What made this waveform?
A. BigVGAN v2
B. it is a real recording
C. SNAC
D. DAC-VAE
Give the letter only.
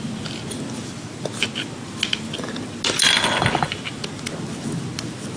B